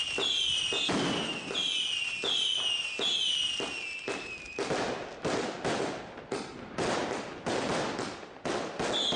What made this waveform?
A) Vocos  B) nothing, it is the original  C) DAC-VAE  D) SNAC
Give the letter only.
B